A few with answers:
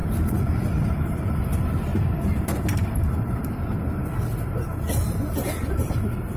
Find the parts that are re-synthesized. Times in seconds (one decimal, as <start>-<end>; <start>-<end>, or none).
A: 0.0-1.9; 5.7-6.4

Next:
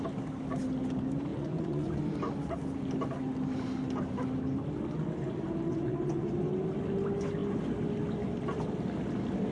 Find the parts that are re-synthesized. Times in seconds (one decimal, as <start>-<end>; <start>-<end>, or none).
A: 1.3-2.0; 5.7-6.3

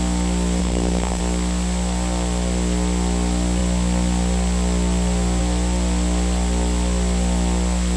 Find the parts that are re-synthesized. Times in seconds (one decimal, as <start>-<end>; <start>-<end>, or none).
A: 0.6-1.2